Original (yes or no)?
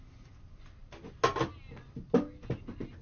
yes